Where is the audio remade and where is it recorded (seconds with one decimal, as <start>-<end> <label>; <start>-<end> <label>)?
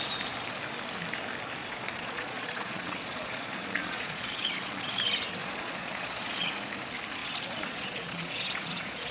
0.0-1.6 recorded; 1.6-5.0 remade; 5.0-5.4 recorded; 5.4-6.5 remade; 6.5-7.2 recorded; 7.2-9.1 remade